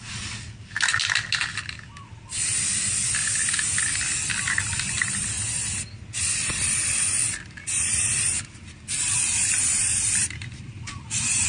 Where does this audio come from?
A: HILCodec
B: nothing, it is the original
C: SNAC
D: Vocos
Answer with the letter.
B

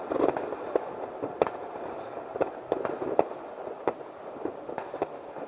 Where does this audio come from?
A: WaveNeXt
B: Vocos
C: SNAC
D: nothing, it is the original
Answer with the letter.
D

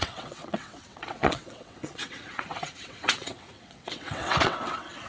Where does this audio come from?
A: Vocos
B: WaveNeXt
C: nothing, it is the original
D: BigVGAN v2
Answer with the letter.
B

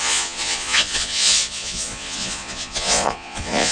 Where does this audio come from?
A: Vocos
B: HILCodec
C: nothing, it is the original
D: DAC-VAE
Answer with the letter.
A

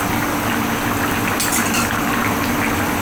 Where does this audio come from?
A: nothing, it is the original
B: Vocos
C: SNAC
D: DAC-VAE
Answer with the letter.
A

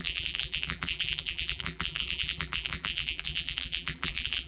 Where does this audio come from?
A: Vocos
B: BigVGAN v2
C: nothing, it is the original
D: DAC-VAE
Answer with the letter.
B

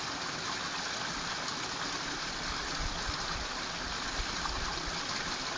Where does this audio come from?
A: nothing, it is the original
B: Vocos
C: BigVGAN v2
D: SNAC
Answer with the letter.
A